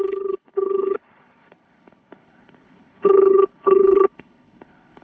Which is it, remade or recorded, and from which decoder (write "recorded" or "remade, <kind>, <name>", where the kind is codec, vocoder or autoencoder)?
remade, codec, HILCodec